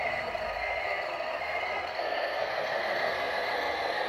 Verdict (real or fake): fake